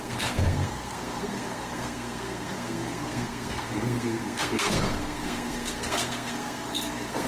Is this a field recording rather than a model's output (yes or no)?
no